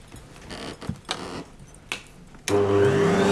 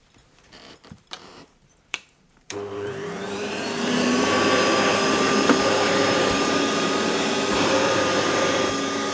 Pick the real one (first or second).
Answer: first